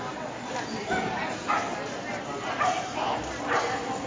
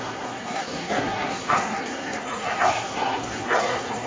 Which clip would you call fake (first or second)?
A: second